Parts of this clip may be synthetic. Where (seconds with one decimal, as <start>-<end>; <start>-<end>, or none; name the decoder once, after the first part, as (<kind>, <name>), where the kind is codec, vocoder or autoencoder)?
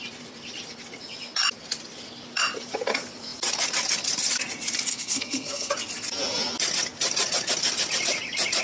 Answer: 4.9-5.7 (codec, SNAC)